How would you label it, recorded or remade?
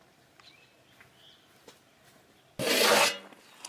recorded